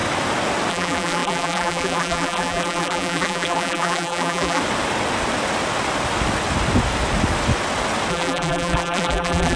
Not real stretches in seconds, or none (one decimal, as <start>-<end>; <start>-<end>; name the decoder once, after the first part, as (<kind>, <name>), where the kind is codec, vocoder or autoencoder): 0.7-4.6 (vocoder, BigVGAN v2); 8.1-9.6